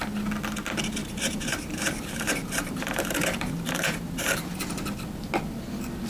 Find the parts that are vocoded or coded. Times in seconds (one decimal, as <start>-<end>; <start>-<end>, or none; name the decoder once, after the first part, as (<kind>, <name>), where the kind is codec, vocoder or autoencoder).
1.0-4.7 (vocoder, BigVGAN v2)